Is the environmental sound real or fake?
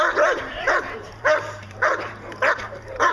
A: fake